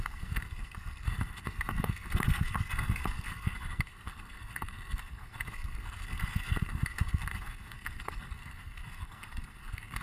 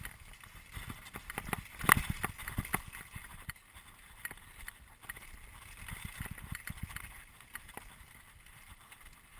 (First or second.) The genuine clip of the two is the second